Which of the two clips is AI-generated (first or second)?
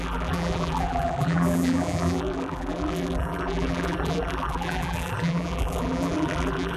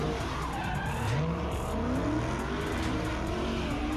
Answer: first